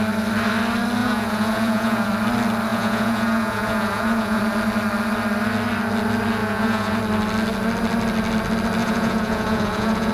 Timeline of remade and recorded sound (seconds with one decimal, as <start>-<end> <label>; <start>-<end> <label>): 0.0-1.0 recorded; 1.0-2.1 remade; 2.1-2.7 recorded; 2.7-4.4 remade; 4.4-6.4 recorded; 6.4-7.0 remade; 7.0-8.8 recorded; 8.8-10.1 remade